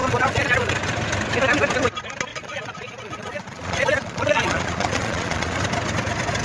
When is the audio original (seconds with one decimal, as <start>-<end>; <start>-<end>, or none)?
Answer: 0.7-2.3; 5.6-6.4